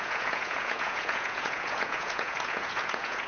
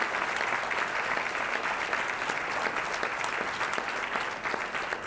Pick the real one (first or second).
second